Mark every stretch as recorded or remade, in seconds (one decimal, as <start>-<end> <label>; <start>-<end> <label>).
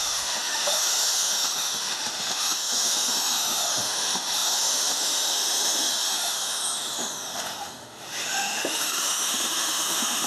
0.0-10.3 remade